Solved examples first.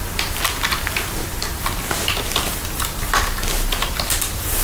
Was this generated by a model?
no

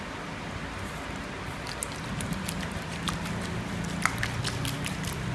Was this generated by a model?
no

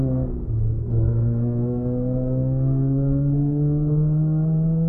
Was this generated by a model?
yes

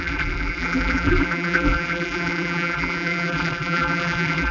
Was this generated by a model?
yes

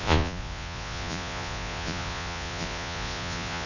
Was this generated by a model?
yes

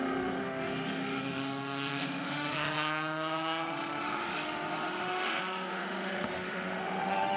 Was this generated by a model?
yes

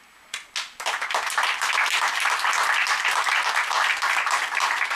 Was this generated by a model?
no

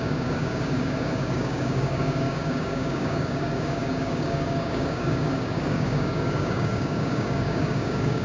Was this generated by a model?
yes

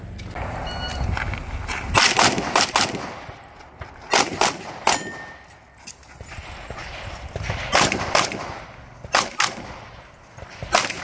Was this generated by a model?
no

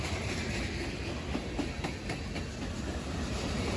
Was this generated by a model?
no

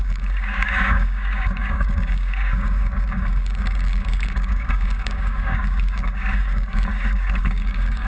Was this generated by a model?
yes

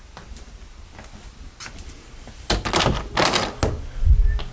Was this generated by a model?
no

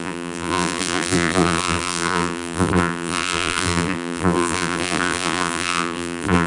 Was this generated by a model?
yes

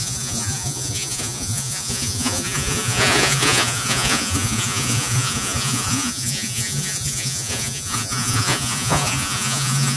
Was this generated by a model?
yes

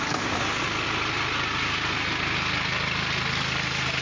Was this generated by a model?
no